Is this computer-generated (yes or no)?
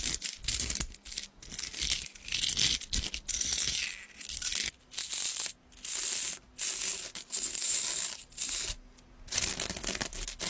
no